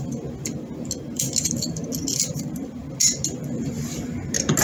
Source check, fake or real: real